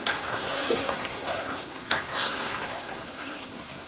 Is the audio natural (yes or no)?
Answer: no